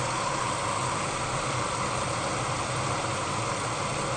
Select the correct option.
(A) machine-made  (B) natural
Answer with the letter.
A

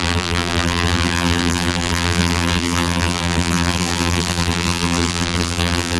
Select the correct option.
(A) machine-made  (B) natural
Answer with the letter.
A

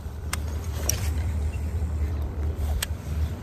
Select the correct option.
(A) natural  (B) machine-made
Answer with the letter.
B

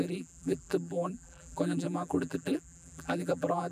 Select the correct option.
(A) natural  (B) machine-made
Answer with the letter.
B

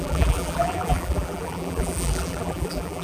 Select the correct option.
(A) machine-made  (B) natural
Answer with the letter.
A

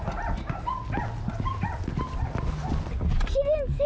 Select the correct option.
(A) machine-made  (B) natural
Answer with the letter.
B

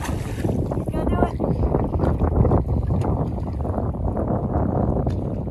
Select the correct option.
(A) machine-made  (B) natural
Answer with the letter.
B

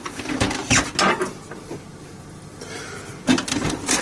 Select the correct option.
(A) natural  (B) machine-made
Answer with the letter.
A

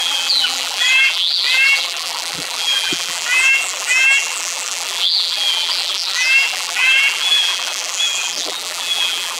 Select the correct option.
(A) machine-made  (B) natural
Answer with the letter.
A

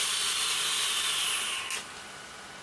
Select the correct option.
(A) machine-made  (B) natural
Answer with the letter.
B